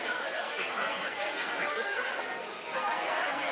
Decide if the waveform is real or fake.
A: fake